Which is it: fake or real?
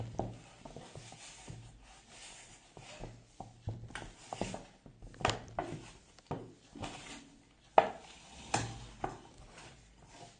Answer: real